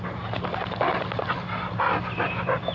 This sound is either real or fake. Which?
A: real